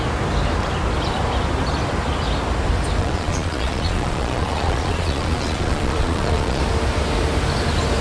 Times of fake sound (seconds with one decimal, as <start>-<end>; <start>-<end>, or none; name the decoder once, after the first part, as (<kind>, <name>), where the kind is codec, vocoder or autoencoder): 3.0-6.6 (vocoder, Vocos)

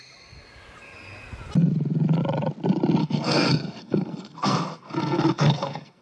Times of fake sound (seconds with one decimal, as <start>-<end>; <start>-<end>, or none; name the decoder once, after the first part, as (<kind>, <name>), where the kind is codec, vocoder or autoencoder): 3.0-6.0 (codec, SNAC)